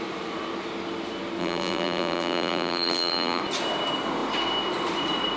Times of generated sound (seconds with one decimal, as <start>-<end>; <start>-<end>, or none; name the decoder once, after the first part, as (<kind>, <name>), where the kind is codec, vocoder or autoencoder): 1.4-3.4 (vocoder, BigVGAN v2)